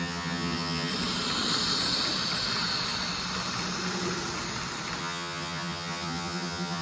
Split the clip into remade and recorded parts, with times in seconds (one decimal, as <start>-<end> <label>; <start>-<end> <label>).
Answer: 0.0-0.9 remade; 0.9-5.0 recorded; 5.0-6.8 remade